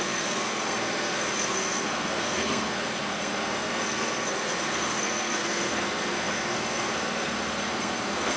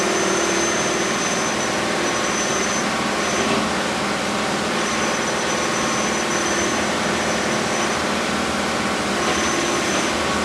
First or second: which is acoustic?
second